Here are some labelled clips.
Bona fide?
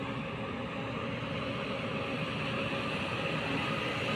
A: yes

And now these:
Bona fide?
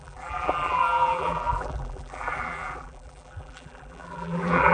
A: no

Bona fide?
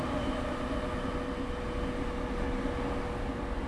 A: yes